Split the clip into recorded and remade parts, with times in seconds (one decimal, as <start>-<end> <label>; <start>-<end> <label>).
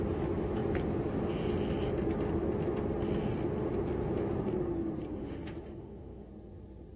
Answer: 0.0-5.1 recorded; 5.1-6.3 remade; 6.3-7.0 recorded